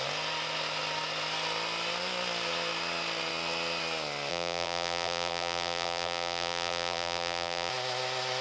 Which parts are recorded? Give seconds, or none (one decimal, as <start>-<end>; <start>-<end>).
0.0-4.3; 7.7-8.4